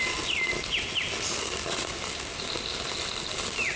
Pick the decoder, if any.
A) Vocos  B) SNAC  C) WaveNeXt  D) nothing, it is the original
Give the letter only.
D